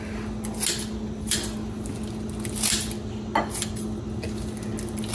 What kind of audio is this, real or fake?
real